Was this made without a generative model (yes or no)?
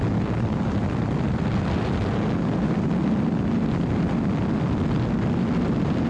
yes